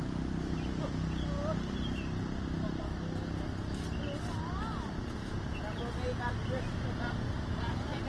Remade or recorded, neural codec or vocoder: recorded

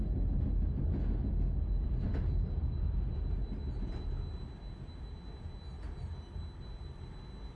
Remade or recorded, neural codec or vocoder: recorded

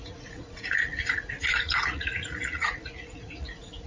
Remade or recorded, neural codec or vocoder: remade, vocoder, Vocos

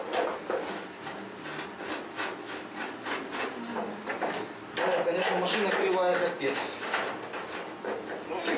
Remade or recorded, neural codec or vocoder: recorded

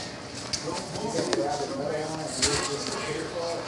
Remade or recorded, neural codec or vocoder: recorded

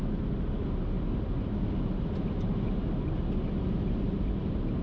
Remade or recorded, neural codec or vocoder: recorded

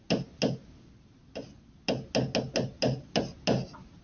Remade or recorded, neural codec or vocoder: recorded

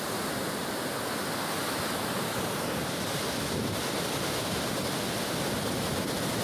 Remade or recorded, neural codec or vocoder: recorded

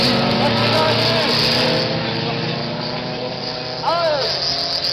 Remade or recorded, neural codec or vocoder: recorded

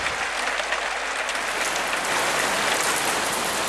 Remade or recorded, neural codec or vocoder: recorded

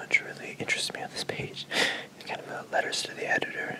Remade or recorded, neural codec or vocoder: recorded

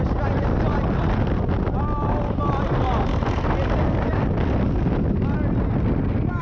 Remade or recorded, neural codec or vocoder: recorded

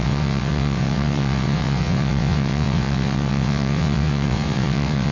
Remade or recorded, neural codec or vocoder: remade, vocoder, WaveNeXt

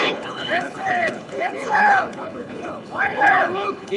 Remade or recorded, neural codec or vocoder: remade, codec, HILCodec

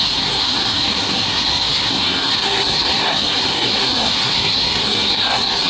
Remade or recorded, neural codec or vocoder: remade, codec, SNAC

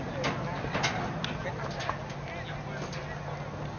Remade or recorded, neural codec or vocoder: recorded